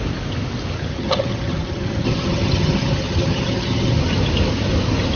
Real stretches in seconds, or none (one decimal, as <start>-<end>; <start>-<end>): 0.0-0.9; 4.0-5.2

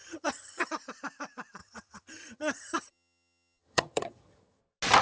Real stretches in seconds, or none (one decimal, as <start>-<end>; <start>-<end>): 0.7-1.6; 4.6-5.0

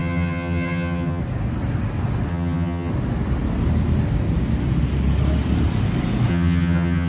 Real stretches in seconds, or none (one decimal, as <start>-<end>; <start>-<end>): 1.2-2.3; 2.9-6.3

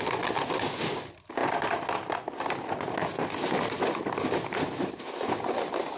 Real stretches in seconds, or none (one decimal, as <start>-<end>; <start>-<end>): 0.0-6.0

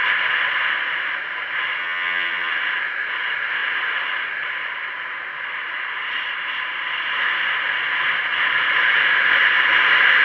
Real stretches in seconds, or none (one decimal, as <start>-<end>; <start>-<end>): 0.0-1.8; 2.5-10.2